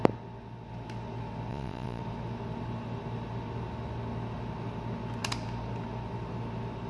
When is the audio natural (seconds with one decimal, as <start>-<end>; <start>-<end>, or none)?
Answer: 0.0-1.5; 2.0-6.9